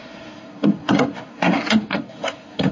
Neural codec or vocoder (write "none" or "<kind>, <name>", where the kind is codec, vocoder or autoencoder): codec, SNAC